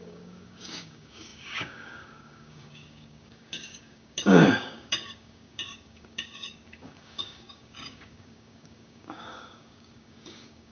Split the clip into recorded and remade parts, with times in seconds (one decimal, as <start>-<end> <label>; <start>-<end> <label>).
0.0-10.7 remade